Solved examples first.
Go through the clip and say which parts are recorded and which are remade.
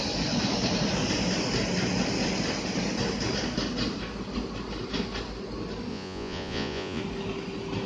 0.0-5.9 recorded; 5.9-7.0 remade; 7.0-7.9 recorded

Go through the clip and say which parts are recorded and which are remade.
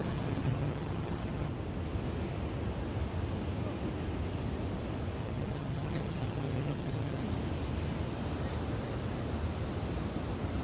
0.0-1.5 remade; 1.5-5.2 recorded; 5.2-7.2 remade; 7.2-10.6 recorded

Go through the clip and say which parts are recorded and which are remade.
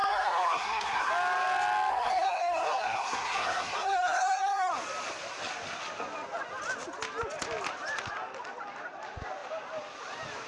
0.0-1.1 remade; 1.1-1.9 recorded; 1.9-4.7 remade; 4.7-10.5 recorded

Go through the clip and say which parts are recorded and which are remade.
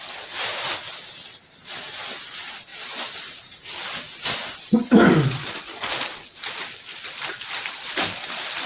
0.0-0.5 recorded; 0.5-1.6 remade; 1.6-2.7 recorded; 2.7-3.4 remade; 3.4-8.7 recorded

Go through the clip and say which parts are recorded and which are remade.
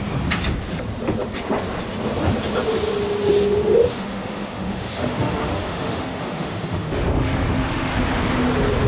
0.0-3.9 recorded; 3.9-7.9 remade; 7.9-8.9 recorded